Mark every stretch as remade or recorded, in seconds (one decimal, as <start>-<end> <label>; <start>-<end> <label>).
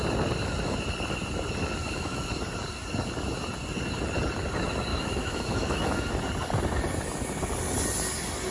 0.0-1.8 recorded; 1.8-2.3 remade; 2.3-4.9 recorded; 4.9-6.1 remade; 6.1-8.5 recorded